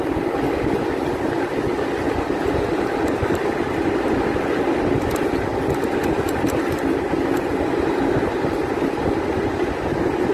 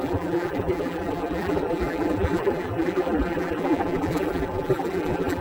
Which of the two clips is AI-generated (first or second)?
second